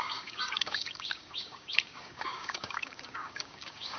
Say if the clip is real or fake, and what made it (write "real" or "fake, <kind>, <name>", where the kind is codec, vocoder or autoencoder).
fake, codec, DAC